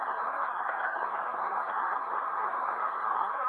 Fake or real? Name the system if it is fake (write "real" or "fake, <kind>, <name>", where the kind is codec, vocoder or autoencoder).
fake, codec, SNAC